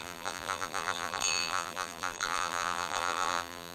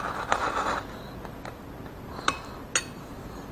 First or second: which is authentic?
second